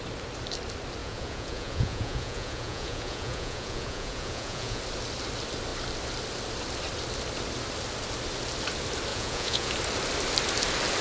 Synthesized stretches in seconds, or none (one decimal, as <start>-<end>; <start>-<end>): 1.0-4.8; 9.1-9.7